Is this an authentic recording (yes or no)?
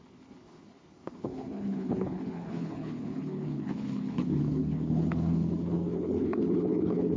no